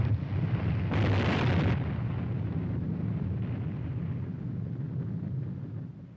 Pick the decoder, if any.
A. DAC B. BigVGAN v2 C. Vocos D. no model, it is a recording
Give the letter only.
D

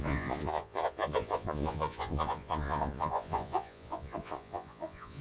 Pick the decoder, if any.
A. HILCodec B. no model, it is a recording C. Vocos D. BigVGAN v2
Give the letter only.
C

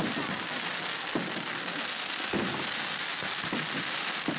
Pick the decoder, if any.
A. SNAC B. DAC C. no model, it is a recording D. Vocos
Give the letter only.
C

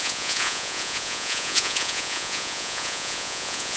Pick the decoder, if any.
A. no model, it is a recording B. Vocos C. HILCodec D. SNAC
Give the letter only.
B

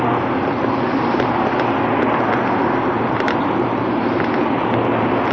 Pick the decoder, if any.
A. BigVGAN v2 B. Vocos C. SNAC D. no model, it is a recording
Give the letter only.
D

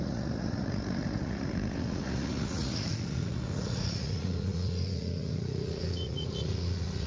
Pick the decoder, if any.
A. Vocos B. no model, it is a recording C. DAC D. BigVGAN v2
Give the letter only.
A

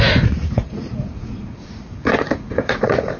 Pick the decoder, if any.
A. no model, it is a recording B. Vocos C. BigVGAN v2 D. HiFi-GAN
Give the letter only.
B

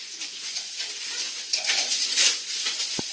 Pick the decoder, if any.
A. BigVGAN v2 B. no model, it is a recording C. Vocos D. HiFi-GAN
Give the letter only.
C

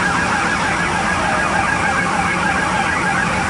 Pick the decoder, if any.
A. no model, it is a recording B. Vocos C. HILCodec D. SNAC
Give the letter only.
A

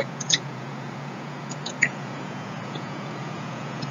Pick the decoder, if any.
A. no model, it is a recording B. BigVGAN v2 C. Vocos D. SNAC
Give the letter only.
C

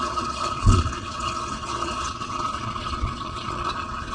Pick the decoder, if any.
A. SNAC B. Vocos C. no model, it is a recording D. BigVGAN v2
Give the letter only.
B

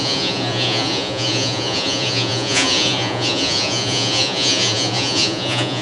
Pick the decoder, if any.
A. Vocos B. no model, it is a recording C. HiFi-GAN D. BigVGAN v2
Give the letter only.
A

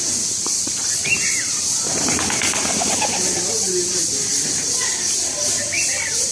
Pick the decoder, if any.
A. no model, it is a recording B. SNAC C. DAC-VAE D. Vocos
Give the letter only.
A